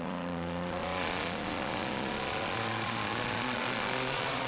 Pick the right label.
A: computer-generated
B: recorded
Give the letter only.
A